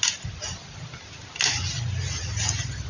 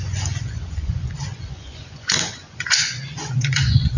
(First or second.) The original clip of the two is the first